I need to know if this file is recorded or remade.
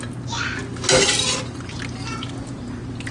recorded